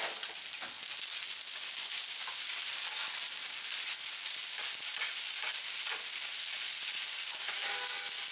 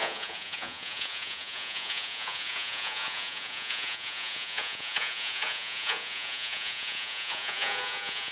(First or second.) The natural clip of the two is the first